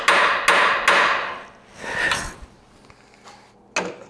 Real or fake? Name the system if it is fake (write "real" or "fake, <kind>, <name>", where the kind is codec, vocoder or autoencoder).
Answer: real